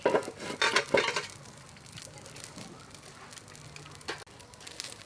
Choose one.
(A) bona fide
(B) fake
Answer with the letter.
A